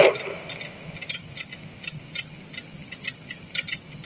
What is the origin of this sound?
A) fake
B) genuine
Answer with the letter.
B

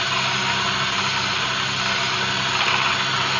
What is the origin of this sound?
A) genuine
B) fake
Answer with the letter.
A